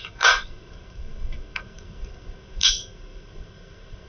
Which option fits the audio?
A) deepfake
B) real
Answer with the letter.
A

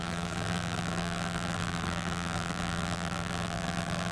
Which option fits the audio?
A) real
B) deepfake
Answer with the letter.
B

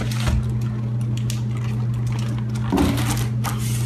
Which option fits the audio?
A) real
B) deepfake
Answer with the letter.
A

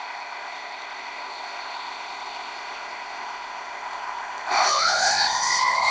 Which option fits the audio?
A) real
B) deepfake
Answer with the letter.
B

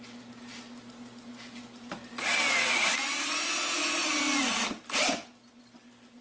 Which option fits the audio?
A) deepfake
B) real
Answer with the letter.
B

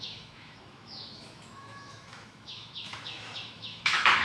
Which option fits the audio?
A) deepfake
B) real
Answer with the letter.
A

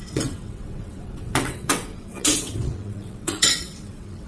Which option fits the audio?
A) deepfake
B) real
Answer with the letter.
A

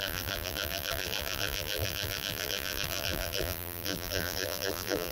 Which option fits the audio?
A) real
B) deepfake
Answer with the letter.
B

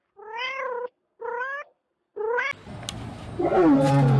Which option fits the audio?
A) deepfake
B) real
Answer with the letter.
B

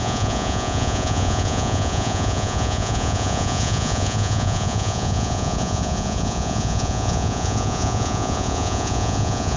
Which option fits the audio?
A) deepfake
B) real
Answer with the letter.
A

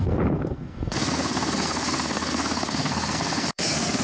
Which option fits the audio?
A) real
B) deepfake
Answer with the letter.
B